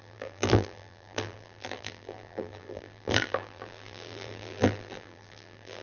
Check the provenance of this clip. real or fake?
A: fake